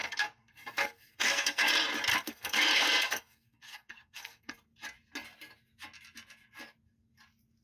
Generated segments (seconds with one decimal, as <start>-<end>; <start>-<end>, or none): 0.0-1.7; 2.1-4.5